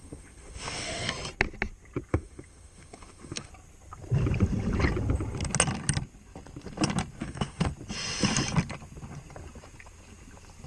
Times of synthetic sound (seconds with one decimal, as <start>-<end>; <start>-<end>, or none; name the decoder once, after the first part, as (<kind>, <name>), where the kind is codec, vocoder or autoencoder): 0.0-1.1 (autoencoder, DAC-VAE); 2.1-3.5; 7.2-7.7